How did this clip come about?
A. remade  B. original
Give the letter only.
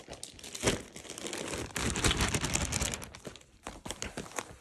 B